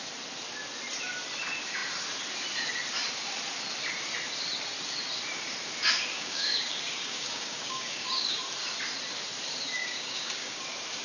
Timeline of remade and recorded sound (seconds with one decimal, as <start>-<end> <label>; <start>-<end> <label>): 0.0-6.1 recorded; 6.1-8.3 remade; 8.3-9.8 recorded; 9.8-10.6 remade; 10.6-11.0 recorded